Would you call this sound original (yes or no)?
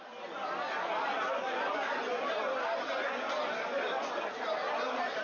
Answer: yes